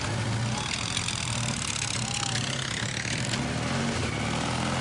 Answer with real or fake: real